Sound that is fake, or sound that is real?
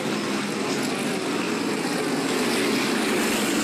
real